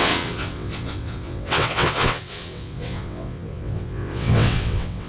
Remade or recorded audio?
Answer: remade